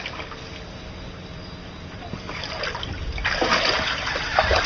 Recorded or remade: recorded